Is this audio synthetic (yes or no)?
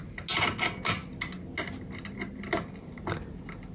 no